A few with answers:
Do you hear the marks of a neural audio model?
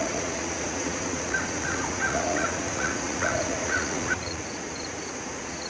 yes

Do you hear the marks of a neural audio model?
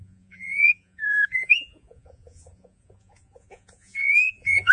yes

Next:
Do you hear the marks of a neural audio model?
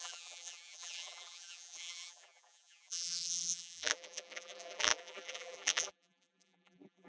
yes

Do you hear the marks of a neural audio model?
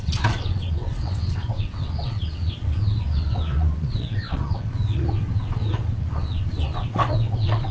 yes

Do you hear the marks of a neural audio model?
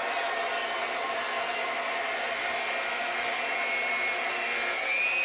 no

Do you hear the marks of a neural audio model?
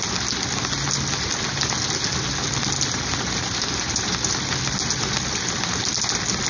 no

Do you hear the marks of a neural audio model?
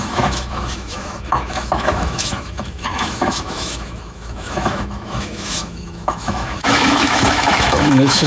yes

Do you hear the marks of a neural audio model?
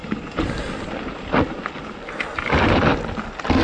no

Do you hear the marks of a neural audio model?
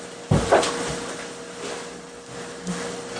no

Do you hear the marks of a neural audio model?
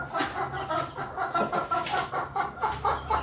no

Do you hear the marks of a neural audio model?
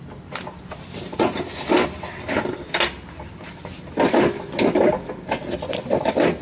no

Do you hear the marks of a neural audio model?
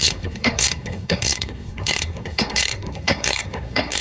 yes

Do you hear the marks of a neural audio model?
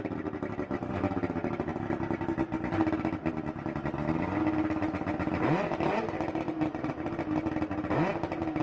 no